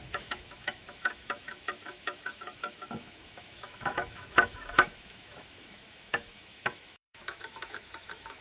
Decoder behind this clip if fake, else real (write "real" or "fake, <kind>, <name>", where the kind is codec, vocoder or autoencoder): fake, autoencoder, DAC-VAE